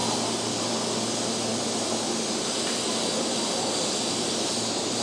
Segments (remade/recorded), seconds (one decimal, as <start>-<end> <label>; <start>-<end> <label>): 0.0-5.0 recorded